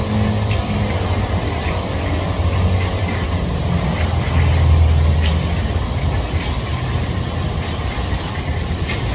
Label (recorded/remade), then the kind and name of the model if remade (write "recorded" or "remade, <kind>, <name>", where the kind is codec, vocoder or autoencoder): recorded